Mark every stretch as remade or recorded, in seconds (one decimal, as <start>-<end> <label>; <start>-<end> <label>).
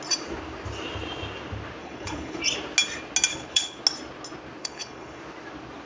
0.0-1.8 recorded; 1.8-2.4 remade; 2.4-3.3 recorded; 3.3-3.8 remade; 3.8-4.6 recorded; 4.6-5.2 remade; 5.2-5.9 recorded